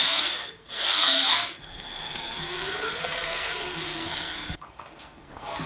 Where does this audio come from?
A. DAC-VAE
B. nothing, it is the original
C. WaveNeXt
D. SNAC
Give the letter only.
D